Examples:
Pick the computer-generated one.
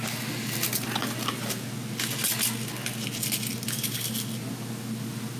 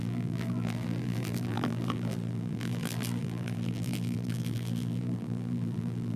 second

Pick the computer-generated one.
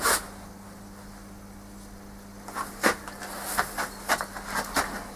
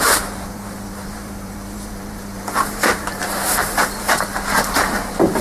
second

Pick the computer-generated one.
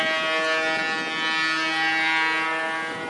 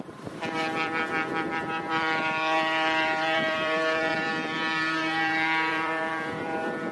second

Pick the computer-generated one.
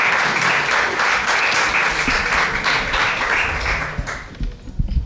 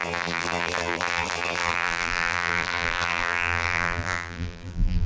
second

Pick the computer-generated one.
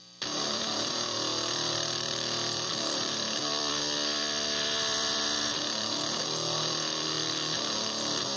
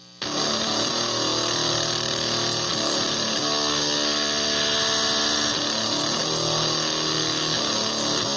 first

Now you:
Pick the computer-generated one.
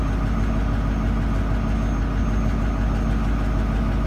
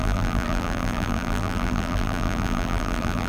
second